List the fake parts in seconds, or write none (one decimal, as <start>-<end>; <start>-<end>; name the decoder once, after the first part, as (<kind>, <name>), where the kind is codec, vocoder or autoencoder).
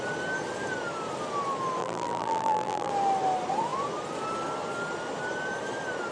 1.8-2.9 (vocoder, BigVGAN v2)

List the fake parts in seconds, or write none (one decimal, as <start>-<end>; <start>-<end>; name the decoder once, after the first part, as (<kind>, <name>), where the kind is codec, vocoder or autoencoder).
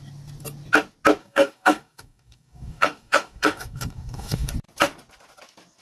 1.2-4.5 (codec, DAC)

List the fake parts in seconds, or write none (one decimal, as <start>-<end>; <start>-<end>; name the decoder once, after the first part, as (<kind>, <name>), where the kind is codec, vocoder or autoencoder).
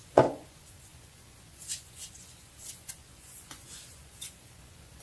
0.0-5.0 (vocoder, Vocos)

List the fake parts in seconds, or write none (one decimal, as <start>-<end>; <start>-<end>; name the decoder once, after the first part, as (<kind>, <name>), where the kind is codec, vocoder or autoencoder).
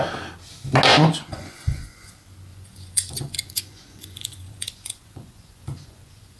0.9-2.1 (vocoder, Vocos); 2.5-6.4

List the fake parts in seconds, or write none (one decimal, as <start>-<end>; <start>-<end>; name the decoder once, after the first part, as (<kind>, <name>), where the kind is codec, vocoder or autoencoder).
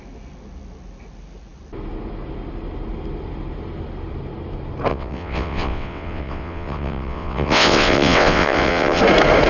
4.9-9.0 (vocoder, WaveNeXt)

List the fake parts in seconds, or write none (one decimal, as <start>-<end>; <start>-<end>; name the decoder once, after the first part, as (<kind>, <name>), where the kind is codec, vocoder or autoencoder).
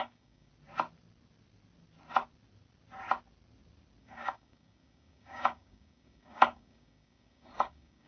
0.0-0.5 (codec, DAC); 4.0-8.1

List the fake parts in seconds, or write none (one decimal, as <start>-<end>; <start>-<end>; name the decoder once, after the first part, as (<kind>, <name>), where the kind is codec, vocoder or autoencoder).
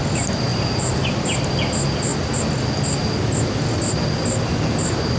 0.5-1.1 (vocoder, BigVGAN v2)